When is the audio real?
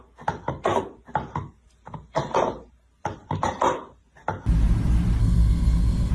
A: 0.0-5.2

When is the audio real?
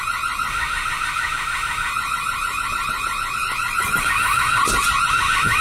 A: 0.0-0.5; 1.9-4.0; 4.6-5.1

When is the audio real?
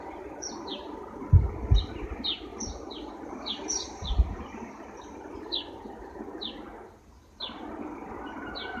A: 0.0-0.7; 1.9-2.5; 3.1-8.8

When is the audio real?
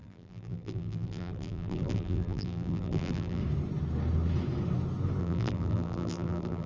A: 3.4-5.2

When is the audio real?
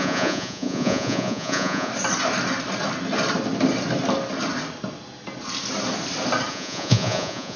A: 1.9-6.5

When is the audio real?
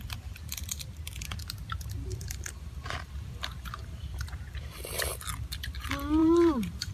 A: 0.0-2.1; 4.4-6.2